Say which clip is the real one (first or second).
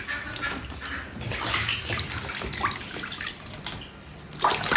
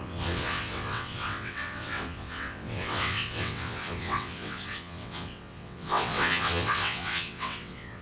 first